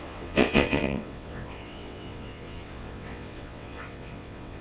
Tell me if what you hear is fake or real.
fake